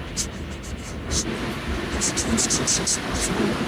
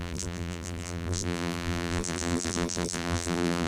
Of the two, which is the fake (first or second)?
second